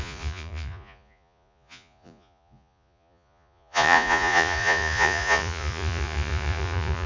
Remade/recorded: remade